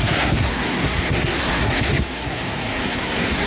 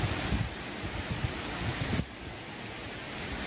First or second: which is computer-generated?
first